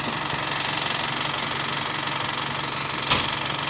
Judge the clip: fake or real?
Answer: real